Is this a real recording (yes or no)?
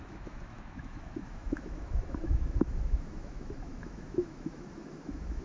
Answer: no